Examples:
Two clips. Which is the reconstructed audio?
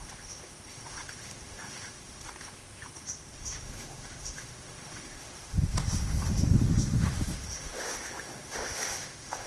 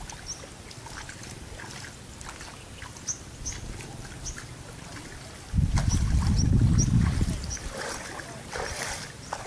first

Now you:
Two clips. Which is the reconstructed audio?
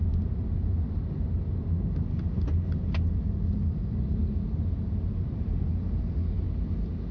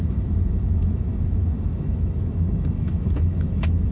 second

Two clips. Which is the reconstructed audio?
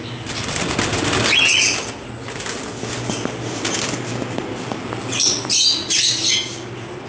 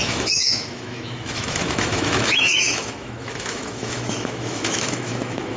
second